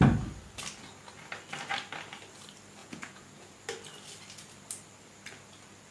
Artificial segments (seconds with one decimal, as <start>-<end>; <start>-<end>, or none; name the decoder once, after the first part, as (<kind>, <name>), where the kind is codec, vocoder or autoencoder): 2.8-3.5 (vocoder, Vocos)